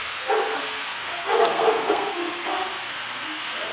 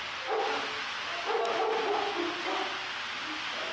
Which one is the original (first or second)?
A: second